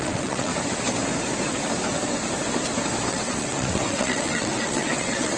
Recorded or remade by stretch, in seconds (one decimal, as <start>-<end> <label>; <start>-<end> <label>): 0.0-0.5 remade; 0.5-3.1 recorded; 3.1-5.4 remade